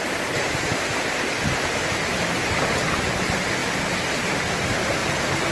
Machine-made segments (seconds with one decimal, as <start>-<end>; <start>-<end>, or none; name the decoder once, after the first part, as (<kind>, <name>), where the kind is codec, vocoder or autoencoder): none